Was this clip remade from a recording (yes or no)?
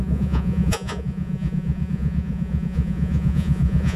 yes